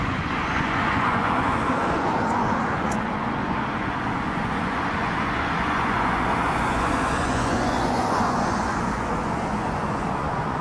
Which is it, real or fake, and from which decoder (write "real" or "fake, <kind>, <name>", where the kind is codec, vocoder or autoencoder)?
fake, vocoder, Vocos